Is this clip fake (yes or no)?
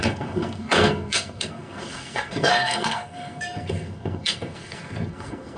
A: yes